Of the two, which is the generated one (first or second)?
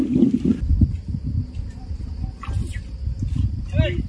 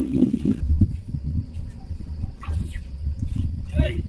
second